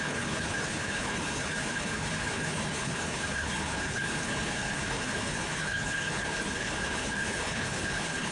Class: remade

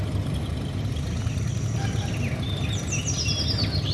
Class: recorded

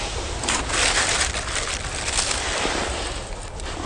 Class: recorded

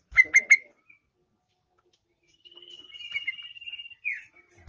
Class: recorded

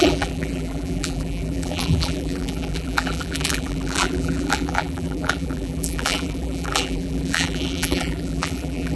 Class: remade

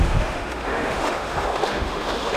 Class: remade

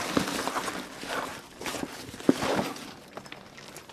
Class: recorded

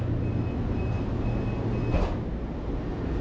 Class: recorded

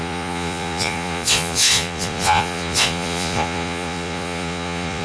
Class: remade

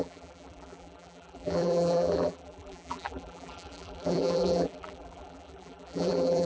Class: remade